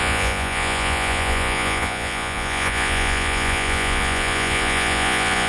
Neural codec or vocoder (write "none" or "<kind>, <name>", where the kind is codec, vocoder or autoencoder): vocoder, Vocos